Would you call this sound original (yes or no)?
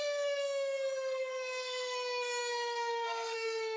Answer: no